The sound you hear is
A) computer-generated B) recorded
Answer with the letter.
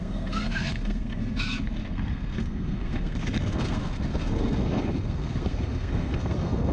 A